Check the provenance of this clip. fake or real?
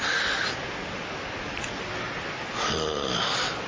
real